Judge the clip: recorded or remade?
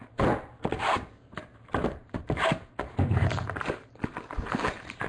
remade